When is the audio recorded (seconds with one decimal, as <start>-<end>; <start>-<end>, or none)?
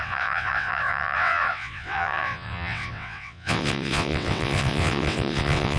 none